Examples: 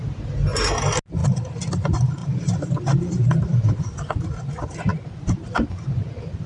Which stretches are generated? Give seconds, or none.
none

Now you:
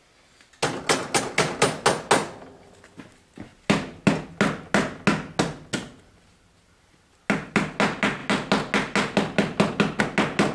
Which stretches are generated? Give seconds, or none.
none

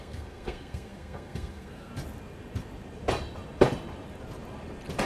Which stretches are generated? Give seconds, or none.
0.0-1.9 (codec, SNAC)

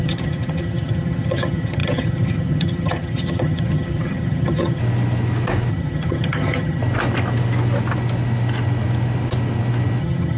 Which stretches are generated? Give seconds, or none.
0.0-4.8 (vocoder, HiFi-GAN); 5.7-6.8; 10.0-10.4

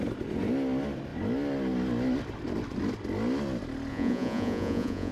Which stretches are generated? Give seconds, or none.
3.9-5.1 (vocoder, Vocos)

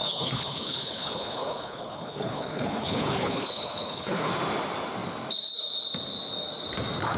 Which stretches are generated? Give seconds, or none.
0.0-4.3 (codec, HILCodec)

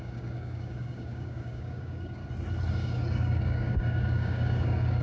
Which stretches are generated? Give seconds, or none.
0.0-2.2 (codec, DAC); 2.7-5.0